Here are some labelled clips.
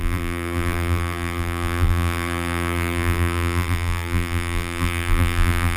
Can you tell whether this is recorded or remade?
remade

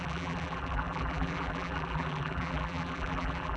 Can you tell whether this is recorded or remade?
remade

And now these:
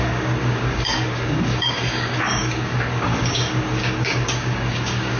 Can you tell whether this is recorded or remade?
remade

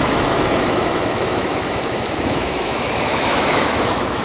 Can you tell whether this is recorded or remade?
remade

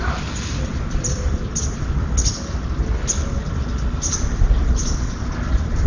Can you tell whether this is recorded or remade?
recorded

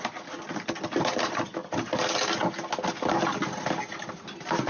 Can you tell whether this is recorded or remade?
recorded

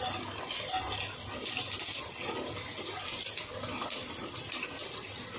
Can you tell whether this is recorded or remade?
recorded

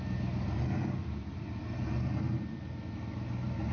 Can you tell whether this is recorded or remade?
recorded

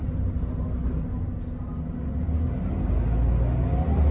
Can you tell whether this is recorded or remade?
recorded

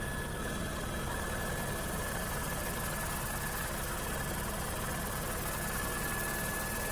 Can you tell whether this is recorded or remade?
recorded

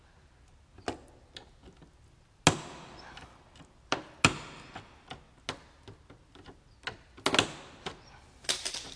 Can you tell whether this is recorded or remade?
recorded